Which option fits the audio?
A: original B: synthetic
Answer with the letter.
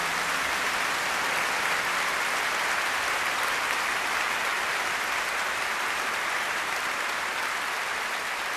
A